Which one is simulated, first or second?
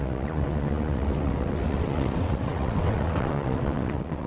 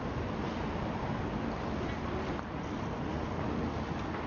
first